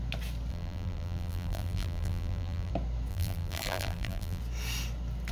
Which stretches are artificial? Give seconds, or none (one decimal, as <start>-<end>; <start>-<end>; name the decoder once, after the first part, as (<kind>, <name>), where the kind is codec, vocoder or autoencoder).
0.5-2.7 (vocoder, BigVGAN v2); 3.1-4.4